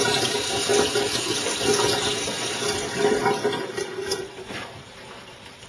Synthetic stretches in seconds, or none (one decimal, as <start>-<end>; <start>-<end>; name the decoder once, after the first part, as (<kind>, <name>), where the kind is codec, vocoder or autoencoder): 0.0-0.7 (vocoder, BigVGAN v2); 4.1-5.7